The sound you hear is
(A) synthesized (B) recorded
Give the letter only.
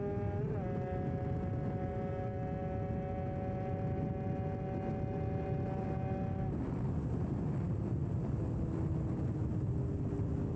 B